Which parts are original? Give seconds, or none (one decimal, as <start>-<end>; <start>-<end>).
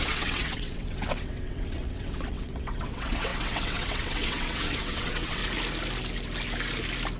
5.4-7.2